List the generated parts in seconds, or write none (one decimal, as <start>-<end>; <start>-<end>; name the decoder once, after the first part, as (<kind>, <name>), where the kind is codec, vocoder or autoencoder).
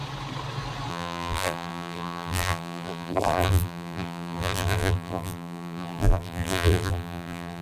0.9-7.6 (vocoder, BigVGAN v2)